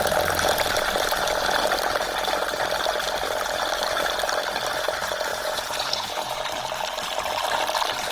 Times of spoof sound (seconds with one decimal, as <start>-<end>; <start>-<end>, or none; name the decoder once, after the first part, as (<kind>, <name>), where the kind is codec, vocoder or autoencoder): 5.3-6.5 (vocoder, Vocos)